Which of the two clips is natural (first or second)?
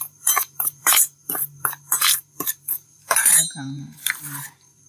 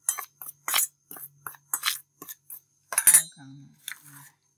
second